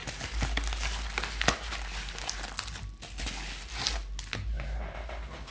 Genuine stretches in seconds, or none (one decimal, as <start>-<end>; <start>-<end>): 0.0-5.5